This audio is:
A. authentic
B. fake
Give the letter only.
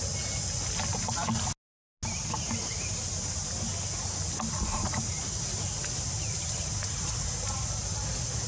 A